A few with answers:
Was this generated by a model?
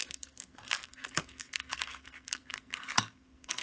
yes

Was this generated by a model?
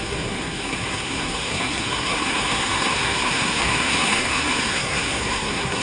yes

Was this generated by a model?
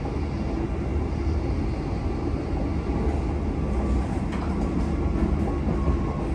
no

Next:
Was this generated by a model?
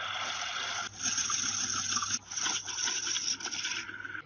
no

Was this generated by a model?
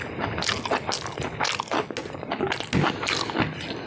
no